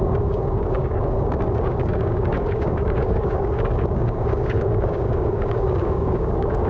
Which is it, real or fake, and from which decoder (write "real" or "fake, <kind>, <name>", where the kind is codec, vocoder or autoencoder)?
fake, codec, DAC